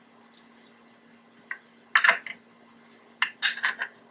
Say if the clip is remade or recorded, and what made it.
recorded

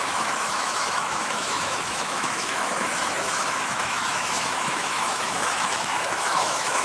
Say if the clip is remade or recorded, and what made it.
remade, autoencoder, DAC-VAE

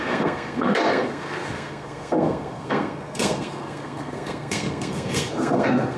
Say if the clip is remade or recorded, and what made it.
remade, codec, SNAC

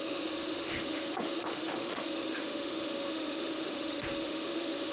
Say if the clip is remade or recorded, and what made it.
remade, autoencoder, DAC-VAE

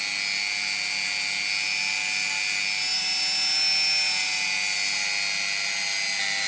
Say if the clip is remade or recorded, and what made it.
recorded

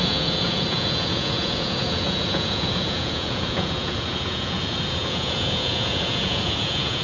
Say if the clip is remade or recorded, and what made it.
remade, vocoder, Vocos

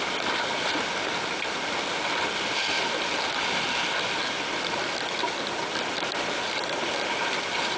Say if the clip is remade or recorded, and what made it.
recorded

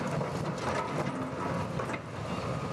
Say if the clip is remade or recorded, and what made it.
recorded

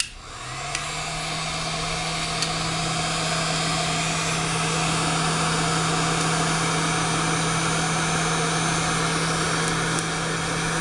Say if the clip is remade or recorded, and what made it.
recorded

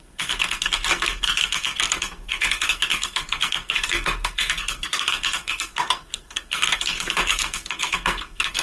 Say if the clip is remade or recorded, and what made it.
remade, codec, SNAC